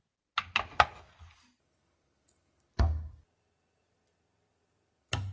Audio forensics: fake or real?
real